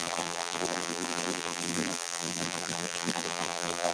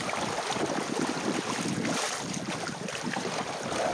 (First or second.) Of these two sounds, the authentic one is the second